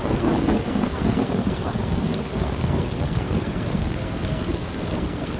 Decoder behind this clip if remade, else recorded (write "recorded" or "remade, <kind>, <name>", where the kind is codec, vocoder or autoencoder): remade, codec, SNAC